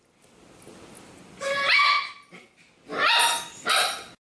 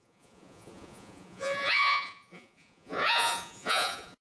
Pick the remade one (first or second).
second